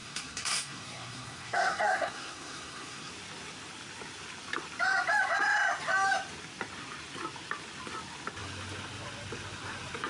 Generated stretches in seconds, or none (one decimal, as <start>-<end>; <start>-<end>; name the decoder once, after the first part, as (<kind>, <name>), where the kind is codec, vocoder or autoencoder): 0.0-3.1 (codec, SNAC)